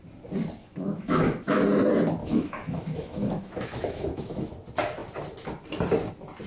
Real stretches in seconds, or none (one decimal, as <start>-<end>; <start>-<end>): 0.0-0.6; 1.6-2.2; 4.5-6.5